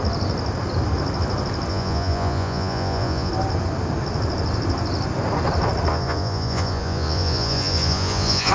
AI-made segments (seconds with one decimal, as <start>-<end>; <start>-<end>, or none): 1.7-3.3; 5.9-8.5